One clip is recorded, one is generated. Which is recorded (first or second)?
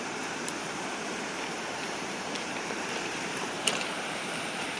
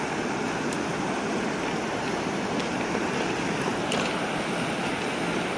second